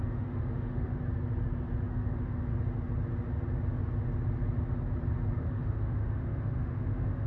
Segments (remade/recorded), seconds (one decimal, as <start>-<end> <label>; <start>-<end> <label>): 0.0-1.0 remade; 1.0-1.9 recorded; 1.9-2.5 remade; 2.5-5.4 recorded; 5.4-7.3 remade